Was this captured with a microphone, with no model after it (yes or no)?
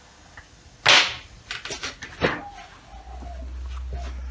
yes